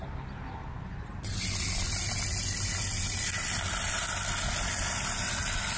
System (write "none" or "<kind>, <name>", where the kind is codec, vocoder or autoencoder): none